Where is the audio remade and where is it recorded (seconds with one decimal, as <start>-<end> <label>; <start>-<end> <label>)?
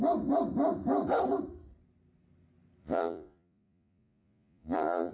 0.0-2.8 recorded; 2.8-5.1 remade